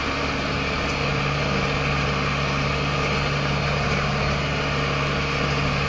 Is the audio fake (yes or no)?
no